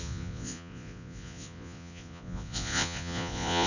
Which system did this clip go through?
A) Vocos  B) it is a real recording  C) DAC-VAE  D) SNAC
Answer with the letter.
A